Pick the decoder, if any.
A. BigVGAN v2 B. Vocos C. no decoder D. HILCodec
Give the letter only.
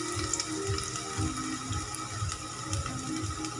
C